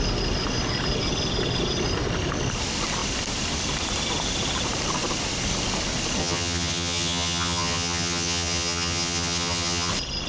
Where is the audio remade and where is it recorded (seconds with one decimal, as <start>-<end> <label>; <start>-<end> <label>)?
0.0-6.2 recorded; 6.2-9.9 remade; 9.9-10.3 recorded